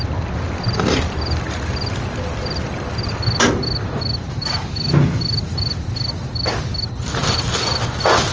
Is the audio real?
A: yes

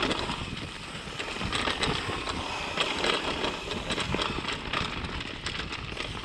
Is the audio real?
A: yes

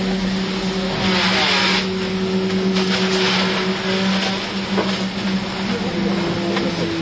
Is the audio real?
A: yes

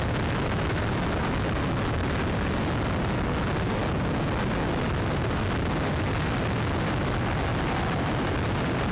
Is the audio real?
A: yes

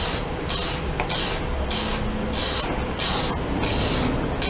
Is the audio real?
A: yes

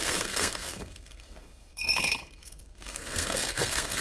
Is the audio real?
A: no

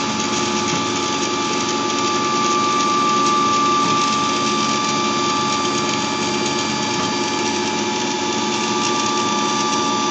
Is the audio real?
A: yes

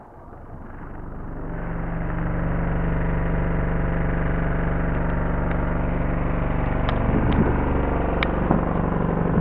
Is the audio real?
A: yes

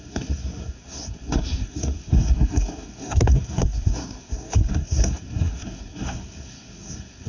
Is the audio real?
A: no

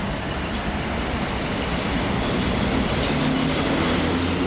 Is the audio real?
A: yes